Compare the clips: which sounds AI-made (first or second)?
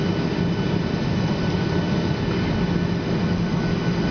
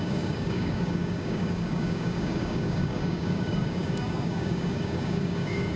second